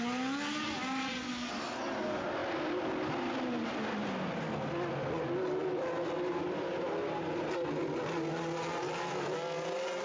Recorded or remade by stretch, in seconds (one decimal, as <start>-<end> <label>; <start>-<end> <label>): 0.0-10.0 recorded